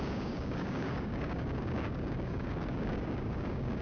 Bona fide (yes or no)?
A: no